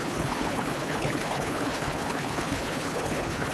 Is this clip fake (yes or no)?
yes